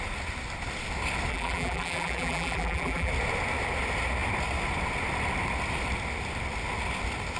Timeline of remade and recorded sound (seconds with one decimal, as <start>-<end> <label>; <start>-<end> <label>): 0.0-1.3 recorded; 1.3-3.1 remade; 3.1-7.4 recorded